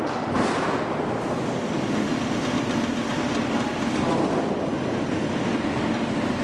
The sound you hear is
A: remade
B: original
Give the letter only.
B